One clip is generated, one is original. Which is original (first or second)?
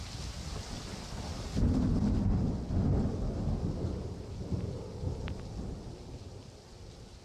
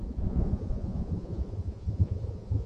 first